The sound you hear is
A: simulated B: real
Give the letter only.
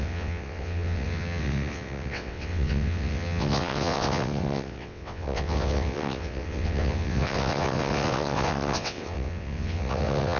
A